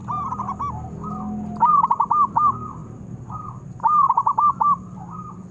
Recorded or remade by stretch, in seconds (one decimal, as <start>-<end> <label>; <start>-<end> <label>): 0.0-1.7 recorded; 1.7-5.5 remade